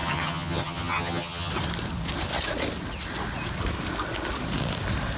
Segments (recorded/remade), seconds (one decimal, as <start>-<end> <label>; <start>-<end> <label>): 0.0-1.5 remade; 1.5-5.2 recorded